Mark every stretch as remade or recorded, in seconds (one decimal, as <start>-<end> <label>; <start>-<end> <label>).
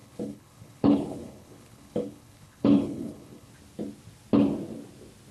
0.0-3.5 remade; 3.5-5.3 recorded